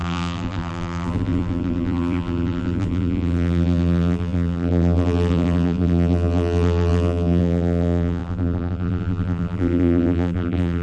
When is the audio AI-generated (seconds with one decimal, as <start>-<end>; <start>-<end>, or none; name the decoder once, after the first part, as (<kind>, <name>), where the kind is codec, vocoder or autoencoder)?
0.0-10.8 (vocoder, BigVGAN v2)

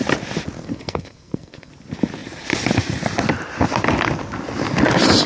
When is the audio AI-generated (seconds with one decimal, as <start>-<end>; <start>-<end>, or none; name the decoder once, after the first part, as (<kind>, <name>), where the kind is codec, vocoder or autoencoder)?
0.6-1.7 (codec, SNAC)

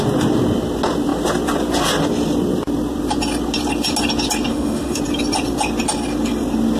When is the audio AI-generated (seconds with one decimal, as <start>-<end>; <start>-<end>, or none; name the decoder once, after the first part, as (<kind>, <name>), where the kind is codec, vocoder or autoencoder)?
4.5-5.0 (autoencoder, DAC-VAE)

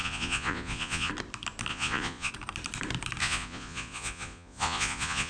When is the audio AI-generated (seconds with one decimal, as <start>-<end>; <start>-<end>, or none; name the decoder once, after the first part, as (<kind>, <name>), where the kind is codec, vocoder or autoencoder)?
0.0-1.1 (vocoder, Vocos); 1.7-2.3; 3.2-5.3